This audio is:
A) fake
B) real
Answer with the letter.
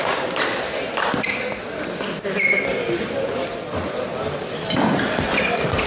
B